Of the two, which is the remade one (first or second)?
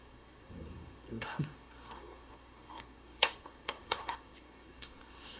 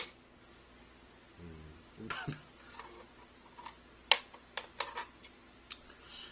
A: first